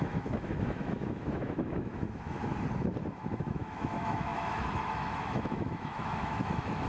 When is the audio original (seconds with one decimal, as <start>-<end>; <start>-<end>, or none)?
2.5-3.1